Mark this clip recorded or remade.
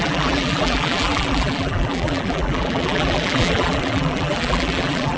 remade